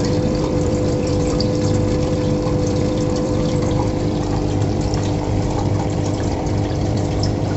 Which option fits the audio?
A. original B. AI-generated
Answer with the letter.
B